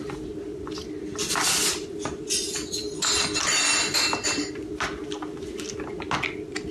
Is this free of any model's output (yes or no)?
yes